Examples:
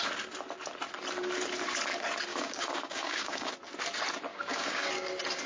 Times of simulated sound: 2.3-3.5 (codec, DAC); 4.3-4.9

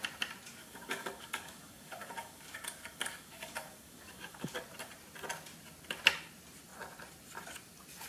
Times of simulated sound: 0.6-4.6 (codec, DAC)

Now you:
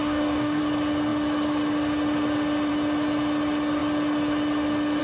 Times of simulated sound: 0.0-0.6 (codec, DAC)

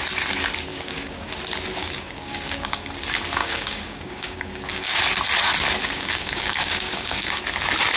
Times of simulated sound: 0.7-1.3 (codec, DAC); 1.8-2.9; 3.4-5.0; 5.8-7.4

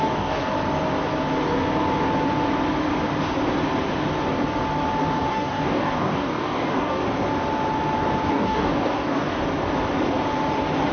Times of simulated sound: 0.0-0.4 (codec, DAC); 5.3-7.0; 8.3-9.4